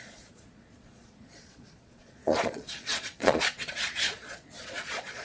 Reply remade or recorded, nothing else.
remade